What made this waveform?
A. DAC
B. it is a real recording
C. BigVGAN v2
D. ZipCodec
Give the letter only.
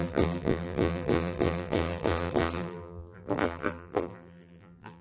C